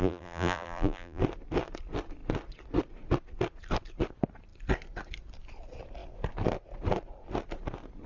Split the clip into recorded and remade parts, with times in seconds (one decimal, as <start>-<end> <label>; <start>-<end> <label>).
0.0-1.2 remade; 1.2-8.1 recorded